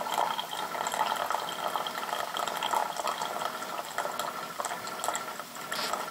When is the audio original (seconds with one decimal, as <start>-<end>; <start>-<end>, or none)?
0.0-6.1